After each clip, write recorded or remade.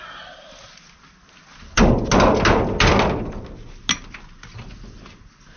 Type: recorded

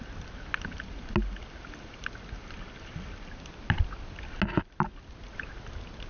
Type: recorded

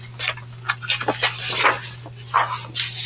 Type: recorded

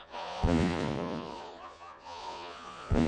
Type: remade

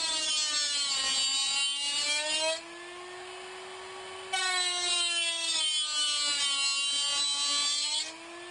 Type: recorded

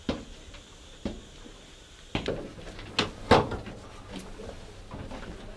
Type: recorded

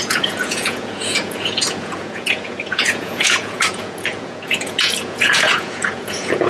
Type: remade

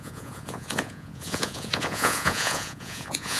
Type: remade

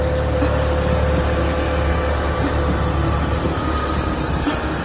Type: recorded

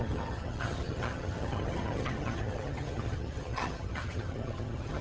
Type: remade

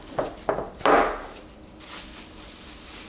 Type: recorded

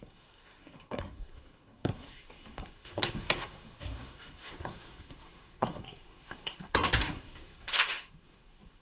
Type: remade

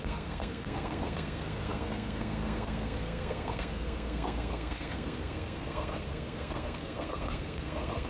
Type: remade